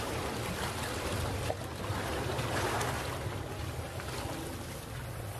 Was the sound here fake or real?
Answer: real